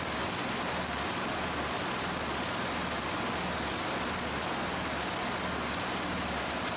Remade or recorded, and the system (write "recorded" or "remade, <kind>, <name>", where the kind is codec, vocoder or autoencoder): recorded